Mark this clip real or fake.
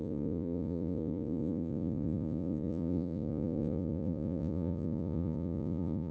fake